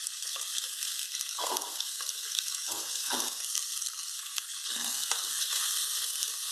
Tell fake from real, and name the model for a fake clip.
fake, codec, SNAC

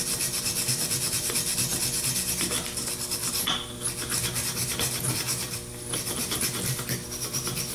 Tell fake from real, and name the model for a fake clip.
real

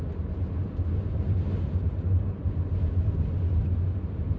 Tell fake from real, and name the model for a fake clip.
real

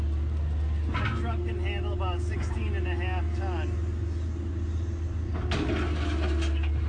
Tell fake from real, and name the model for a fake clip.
real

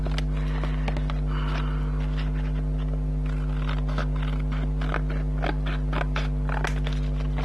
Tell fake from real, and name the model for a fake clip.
real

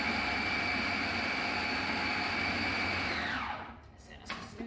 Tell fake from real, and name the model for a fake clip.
real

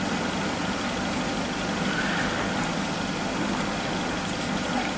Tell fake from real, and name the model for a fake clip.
real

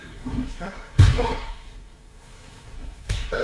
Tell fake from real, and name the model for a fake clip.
fake, codec, SNAC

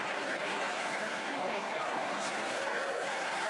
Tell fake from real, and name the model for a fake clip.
fake, codec, SNAC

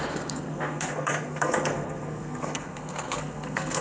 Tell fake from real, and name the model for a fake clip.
fake, codec, SNAC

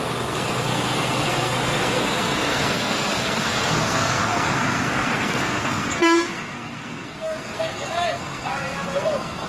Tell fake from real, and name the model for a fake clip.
fake, codec, SNAC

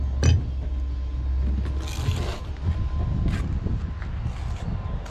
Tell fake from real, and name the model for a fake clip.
real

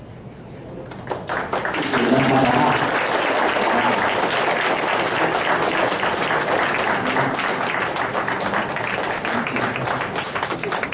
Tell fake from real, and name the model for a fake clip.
real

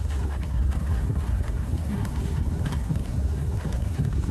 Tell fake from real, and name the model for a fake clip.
fake, codec, SNAC